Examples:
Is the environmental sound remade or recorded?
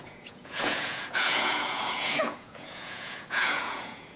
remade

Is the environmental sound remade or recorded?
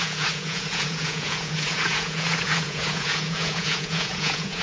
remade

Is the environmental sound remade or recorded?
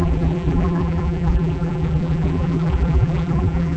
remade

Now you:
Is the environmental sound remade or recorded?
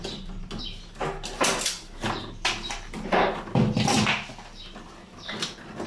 recorded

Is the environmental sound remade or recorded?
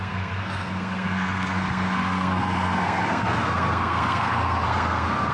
remade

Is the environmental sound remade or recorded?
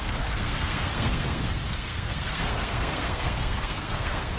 remade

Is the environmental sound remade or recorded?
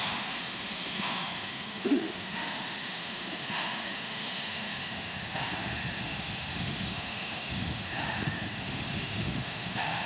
remade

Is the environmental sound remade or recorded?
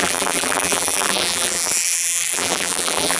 remade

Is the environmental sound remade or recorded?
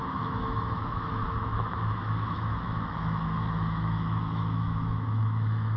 remade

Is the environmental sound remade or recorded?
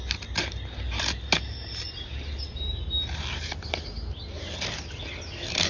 recorded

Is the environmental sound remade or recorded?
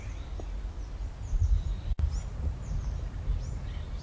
recorded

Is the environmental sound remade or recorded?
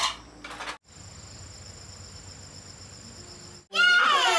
recorded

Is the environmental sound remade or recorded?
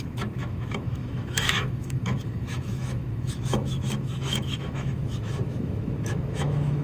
remade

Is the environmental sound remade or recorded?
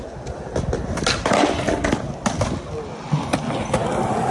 recorded